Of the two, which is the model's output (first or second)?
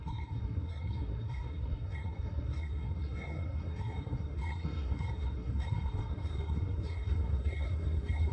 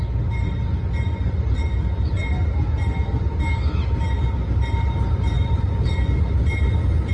first